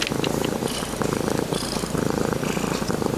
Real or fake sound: real